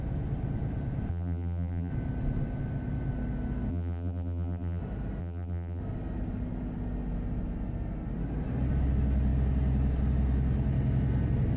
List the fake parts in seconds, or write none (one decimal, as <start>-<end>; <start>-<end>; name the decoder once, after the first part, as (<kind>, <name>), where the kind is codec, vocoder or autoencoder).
1.1-1.9 (vocoder, BigVGAN v2); 3.7-4.8; 5.2-5.8